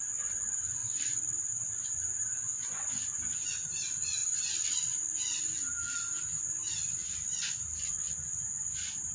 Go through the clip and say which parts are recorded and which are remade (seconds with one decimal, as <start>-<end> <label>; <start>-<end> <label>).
0.0-0.8 recorded; 0.8-1.9 remade; 1.9-4.2 recorded; 4.2-5.4 remade; 5.4-9.1 recorded